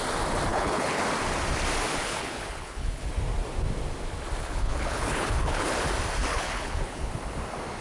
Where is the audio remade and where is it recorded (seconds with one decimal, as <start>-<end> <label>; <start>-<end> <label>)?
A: 0.0-0.5 recorded; 0.5-1.0 remade; 1.0-2.0 recorded; 2.0-3.1 remade; 3.1-4.4 recorded; 4.4-5.7 remade; 5.7-6.3 recorded; 6.3-7.1 remade; 7.1-7.8 recorded